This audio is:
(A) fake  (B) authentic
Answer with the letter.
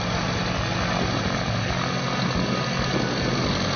B